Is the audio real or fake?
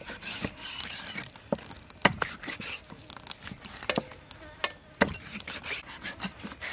real